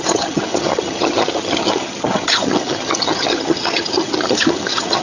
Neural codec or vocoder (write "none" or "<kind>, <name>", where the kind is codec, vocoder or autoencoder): vocoder, HiFi-GAN